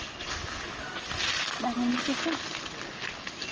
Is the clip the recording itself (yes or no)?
yes